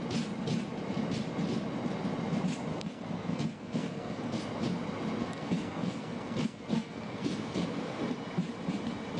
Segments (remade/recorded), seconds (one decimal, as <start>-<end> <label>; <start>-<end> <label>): 0.0-2.7 recorded; 2.7-4.4 remade; 4.4-5.2 recorded; 5.2-8.0 remade; 8.0-9.2 recorded